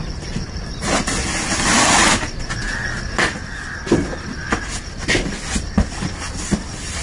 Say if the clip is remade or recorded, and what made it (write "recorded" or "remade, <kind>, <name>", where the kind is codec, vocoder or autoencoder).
remade, vocoder, BigVGAN v2